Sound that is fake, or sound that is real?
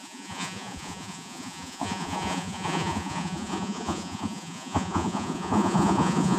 fake